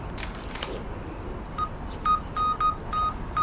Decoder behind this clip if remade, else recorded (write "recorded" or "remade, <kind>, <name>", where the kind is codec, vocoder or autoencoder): recorded